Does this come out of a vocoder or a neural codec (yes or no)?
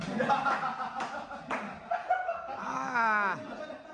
no